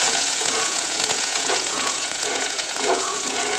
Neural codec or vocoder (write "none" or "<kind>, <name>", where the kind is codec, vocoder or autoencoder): vocoder, Vocos